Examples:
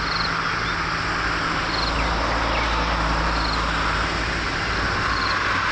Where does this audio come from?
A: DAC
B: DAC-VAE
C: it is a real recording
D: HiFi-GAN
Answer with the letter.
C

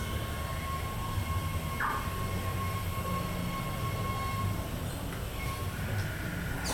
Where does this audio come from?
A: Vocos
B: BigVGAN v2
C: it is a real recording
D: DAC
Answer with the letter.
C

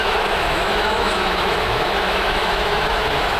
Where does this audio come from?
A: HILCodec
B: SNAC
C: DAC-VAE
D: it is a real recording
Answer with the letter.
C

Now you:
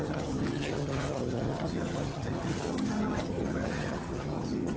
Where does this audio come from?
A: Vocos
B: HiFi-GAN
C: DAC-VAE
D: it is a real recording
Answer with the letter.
B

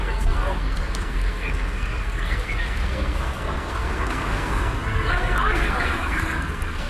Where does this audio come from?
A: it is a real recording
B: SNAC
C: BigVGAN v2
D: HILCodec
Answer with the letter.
B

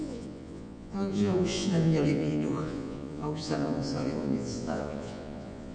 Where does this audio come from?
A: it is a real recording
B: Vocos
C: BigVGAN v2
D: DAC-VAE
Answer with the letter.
B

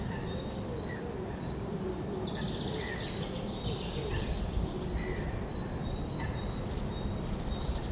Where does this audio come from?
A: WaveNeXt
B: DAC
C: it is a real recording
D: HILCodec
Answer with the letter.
C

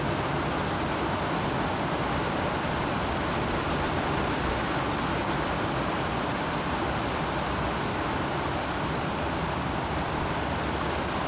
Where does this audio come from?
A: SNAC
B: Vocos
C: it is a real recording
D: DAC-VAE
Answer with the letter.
C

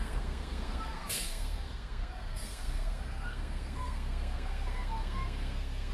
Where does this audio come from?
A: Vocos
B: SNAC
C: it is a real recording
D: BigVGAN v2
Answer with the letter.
B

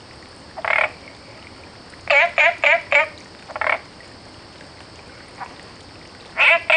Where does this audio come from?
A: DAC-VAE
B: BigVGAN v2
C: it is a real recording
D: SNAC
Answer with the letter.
C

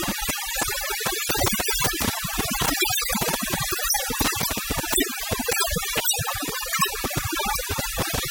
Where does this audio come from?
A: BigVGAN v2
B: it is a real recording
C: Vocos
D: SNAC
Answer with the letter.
A